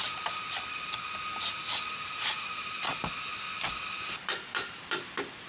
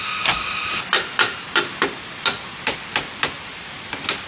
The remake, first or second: first